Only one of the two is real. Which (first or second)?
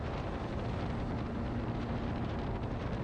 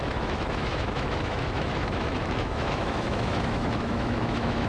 first